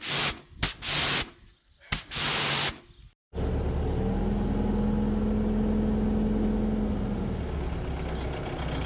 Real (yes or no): yes